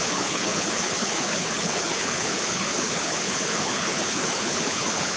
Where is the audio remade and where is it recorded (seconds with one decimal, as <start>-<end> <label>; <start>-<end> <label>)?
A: 0.0-5.2 remade